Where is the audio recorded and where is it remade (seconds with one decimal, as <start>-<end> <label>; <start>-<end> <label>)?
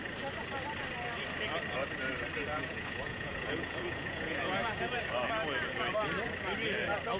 0.0-2.5 recorded; 2.5-5.0 remade; 5.0-7.2 recorded